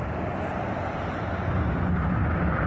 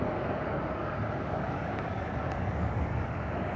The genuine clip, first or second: first